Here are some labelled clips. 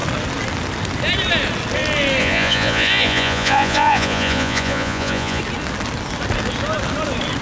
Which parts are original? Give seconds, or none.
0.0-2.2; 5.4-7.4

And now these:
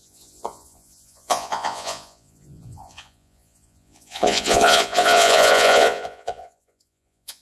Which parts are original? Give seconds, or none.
none

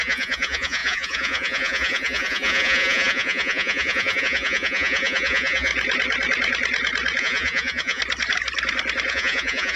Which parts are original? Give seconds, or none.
5.7-7.2; 8.0-9.1